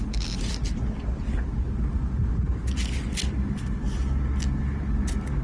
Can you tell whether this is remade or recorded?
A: recorded